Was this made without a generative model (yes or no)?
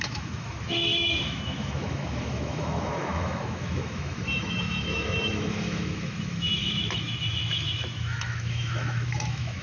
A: no